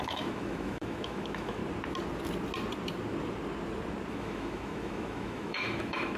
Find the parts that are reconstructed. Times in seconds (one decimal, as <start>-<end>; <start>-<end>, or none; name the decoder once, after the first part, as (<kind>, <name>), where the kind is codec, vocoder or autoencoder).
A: 0.0-1.6 (autoencoder, DAC-VAE); 4.1-6.2